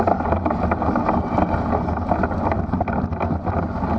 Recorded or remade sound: recorded